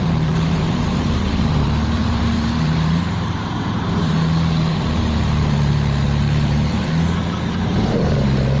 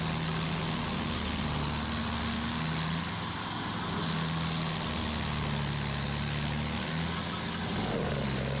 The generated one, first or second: first